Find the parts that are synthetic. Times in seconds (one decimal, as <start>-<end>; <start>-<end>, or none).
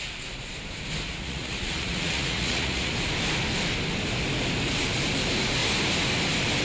1.1-2.9